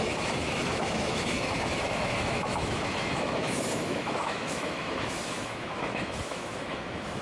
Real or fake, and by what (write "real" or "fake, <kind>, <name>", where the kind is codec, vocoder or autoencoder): fake, autoencoder, DAC-VAE